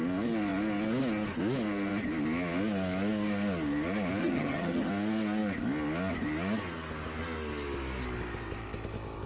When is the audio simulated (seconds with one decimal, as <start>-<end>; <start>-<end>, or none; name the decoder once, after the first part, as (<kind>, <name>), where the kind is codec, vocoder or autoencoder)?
4.2-4.9 (vocoder, HiFi-GAN)